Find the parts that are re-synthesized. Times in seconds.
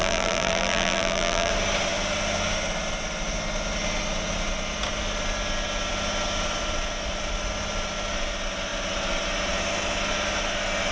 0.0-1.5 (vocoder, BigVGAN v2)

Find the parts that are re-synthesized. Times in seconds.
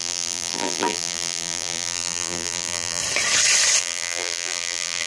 0.0-3.0 (vocoder, BigVGAN v2); 3.8-5.1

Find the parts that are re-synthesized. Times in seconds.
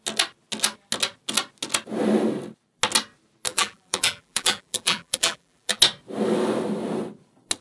3.5-5.8 (vocoder, BigVGAN v2)